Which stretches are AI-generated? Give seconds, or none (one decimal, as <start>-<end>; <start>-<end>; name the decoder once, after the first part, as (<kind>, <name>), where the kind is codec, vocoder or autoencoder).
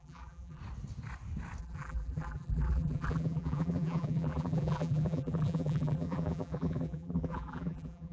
0.0-0.6 (vocoder, BigVGAN v2); 1.6-8.1